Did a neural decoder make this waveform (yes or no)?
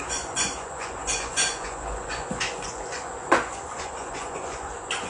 yes